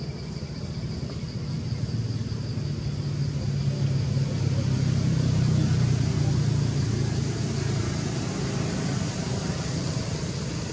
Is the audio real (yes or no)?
yes